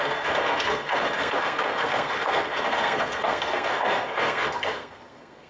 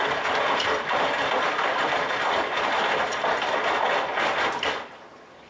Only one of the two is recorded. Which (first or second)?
second